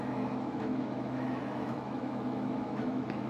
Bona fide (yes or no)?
no